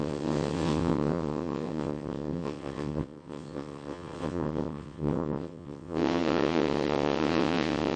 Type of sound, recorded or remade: remade